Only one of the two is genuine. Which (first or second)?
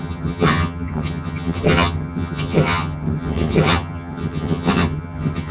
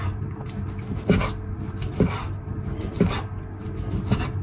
second